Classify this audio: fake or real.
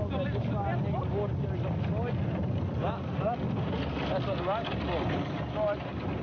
real